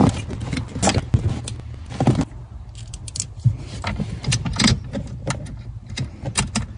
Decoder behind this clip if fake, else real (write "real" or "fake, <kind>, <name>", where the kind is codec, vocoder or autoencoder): real